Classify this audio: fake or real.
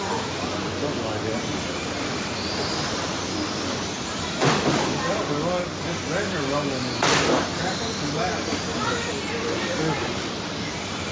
real